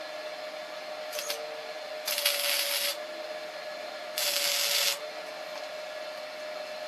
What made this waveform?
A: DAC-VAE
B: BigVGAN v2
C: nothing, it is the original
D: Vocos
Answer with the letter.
C